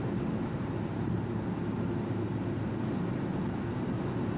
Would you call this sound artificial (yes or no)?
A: no